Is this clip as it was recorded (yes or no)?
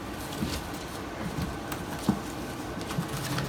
yes